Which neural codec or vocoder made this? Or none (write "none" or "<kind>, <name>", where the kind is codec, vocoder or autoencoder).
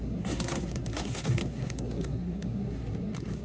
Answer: codec, SNAC